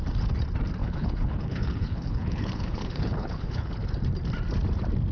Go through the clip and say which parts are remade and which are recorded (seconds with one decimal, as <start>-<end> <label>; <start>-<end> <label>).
0.0-0.8 recorded; 0.8-3.9 remade; 3.9-5.1 recorded